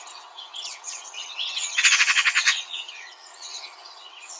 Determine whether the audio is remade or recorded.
remade